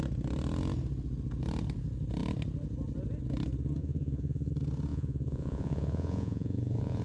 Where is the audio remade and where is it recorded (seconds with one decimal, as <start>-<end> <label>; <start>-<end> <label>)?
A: 0.0-3.8 recorded; 3.8-4.5 remade; 4.5-4.9 recorded; 4.9-7.0 remade